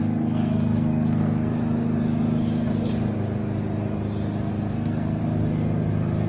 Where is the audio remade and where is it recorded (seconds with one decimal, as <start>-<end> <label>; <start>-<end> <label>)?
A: 0.0-1.5 remade; 1.5-4.7 recorded; 4.7-5.2 remade; 5.2-6.3 recorded